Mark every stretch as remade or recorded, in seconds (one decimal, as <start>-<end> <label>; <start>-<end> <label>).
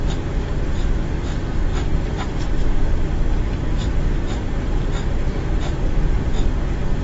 0.0-1.7 recorded; 1.7-5.9 remade; 5.9-7.0 recorded